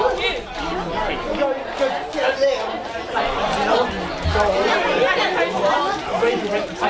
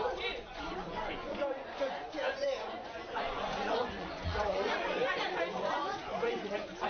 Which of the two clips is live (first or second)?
first